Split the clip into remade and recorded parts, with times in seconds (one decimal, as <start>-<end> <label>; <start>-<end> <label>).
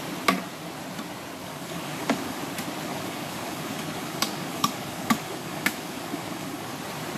0.0-1.4 recorded; 1.4-2.4 remade; 2.4-2.9 recorded; 2.9-6.7 remade; 6.7-7.2 recorded